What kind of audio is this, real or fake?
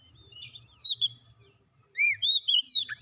fake